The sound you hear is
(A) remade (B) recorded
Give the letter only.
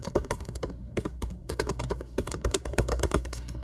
A